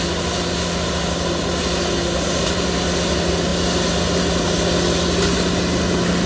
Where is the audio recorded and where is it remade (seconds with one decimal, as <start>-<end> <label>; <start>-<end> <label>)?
0.0-6.3 recorded